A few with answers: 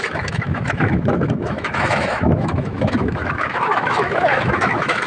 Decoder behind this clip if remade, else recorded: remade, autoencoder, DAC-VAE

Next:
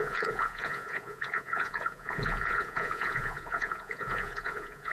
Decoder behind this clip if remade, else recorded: remade, vocoder, Vocos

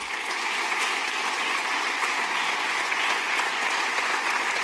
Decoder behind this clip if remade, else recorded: remade, vocoder, Vocos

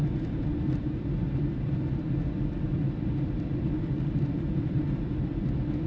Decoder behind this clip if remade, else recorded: remade, vocoder, BigVGAN v2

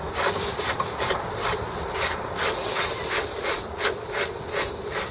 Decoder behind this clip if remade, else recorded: recorded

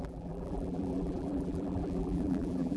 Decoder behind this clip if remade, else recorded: remade, vocoder, BigVGAN v2